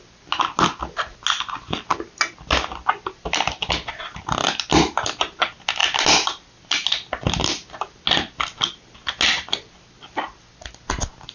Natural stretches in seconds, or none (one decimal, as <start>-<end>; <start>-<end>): 0.0-11.3